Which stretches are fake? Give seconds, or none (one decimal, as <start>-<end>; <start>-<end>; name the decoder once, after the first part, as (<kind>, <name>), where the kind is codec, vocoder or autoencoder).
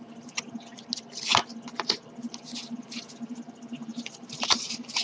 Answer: 3.9-5.0 (vocoder, BigVGAN v2)